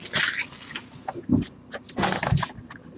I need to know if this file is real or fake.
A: real